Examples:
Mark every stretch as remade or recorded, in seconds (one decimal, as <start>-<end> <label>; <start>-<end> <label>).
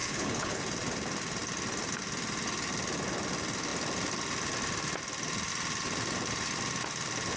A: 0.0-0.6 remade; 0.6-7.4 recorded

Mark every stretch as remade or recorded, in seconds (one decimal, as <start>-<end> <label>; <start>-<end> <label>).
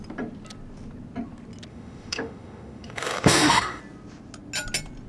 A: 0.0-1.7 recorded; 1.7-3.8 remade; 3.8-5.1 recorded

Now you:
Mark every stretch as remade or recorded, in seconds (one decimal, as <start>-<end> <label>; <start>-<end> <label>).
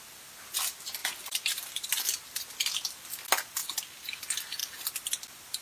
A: 0.0-1.0 recorded; 1.0-1.9 remade; 1.9-4.6 recorded; 4.6-5.1 remade; 5.1-5.6 recorded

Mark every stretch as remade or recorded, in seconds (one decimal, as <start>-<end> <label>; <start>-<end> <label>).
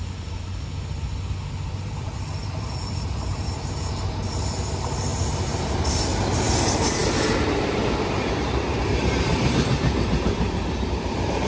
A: 0.0-0.7 remade; 0.7-1.8 recorded; 1.8-11.5 remade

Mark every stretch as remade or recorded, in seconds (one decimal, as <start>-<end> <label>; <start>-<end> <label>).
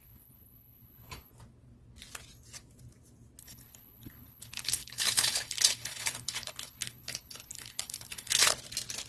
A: 0.0-1.3 remade; 1.3-3.4 recorded; 3.4-8.5 remade; 8.5-9.1 recorded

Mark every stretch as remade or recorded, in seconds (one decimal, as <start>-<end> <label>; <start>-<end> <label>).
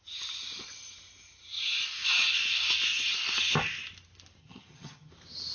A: 0.0-4.4 recorded; 4.4-5.1 remade; 5.1-5.5 recorded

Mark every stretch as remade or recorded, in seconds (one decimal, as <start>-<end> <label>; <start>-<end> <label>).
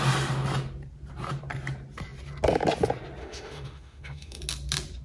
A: 0.0-3.2 recorded; 3.2-4.4 remade; 4.4-5.0 recorded